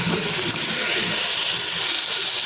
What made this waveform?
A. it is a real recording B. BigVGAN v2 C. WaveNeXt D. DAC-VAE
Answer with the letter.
A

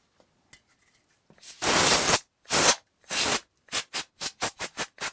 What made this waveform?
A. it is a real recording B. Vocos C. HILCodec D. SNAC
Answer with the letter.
A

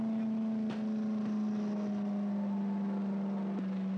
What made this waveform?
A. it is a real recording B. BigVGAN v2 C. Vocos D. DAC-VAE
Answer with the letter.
A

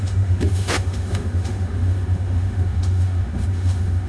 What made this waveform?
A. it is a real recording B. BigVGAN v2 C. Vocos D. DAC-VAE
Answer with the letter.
D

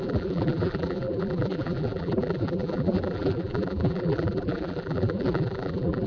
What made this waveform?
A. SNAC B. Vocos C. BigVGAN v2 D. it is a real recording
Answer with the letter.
C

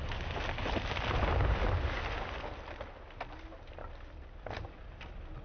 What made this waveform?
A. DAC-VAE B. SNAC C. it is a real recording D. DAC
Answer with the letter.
C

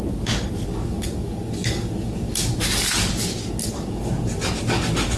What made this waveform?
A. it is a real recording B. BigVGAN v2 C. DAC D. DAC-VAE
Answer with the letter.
C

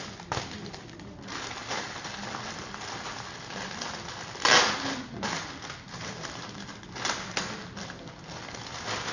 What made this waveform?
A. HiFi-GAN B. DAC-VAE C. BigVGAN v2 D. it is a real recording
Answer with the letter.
D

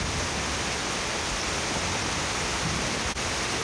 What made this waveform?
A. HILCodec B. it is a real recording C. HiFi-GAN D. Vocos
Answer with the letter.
B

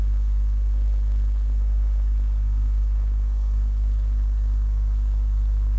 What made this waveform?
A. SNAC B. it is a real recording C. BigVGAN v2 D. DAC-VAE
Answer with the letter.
A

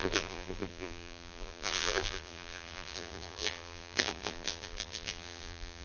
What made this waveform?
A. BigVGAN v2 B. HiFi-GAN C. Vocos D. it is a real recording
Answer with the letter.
A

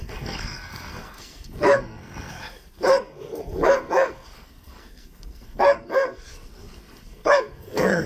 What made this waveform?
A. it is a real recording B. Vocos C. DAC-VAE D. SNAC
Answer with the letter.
D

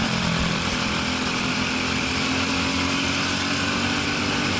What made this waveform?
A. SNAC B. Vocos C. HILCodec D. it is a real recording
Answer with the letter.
D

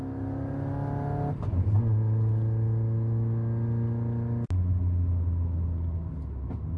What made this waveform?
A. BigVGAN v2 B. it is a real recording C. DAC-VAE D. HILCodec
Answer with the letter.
B